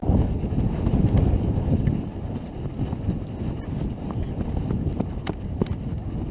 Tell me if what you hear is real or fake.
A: real